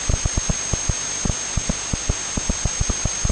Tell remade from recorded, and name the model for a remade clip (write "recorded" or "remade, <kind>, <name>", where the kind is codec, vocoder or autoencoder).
recorded